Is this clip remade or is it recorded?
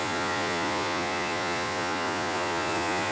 remade